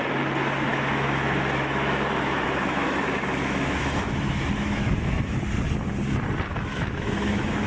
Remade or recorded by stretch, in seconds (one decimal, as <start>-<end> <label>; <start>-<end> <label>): 0.0-0.7 recorded; 0.7-5.3 remade; 5.3-6.5 recorded; 6.5-7.7 remade